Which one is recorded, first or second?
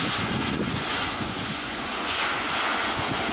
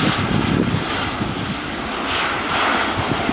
second